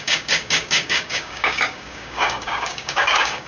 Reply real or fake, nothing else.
fake